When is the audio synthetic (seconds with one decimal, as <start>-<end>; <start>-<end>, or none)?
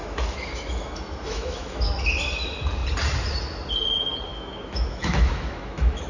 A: 0.0-1.8; 4.3-6.1